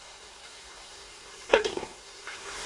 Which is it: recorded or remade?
remade